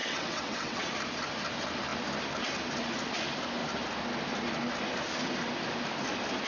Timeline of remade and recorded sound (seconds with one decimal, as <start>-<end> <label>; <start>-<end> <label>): 0.0-0.8 remade; 0.8-6.5 recorded